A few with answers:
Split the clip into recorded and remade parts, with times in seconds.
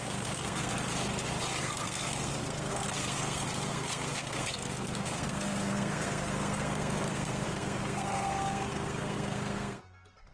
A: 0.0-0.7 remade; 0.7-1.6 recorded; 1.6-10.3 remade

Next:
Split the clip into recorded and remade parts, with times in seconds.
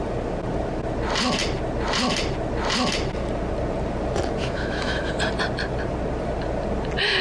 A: 0.0-4.4 recorded; 4.4-5.1 remade; 5.1-7.2 recorded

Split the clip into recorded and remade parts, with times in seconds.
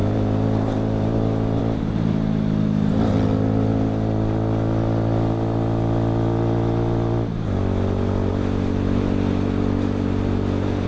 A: 0.0-1.6 remade; 1.6-10.9 recorded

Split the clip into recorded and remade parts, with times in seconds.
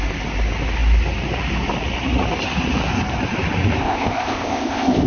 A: 0.0-3.8 recorded; 3.8-5.1 remade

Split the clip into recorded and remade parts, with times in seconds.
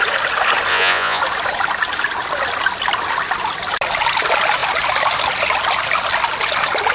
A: 0.0-0.7 recorded; 0.7-1.2 remade; 1.2-6.9 recorded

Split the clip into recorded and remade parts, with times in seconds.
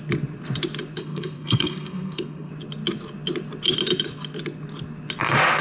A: 0.0-1.0 recorded; 1.0-2.5 remade; 2.5-5.6 recorded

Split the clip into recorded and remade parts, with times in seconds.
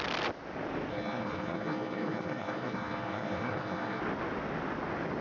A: 0.0-0.9 recorded; 0.9-4.0 remade; 4.0-5.2 recorded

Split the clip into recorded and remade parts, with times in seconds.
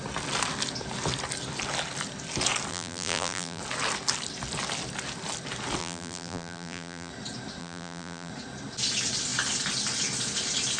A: 0.0-2.7 recorded; 2.7-3.6 remade; 3.6-5.8 recorded; 5.8-7.1 remade; 7.1-7.6 recorded; 7.6-8.3 remade; 8.3-10.8 recorded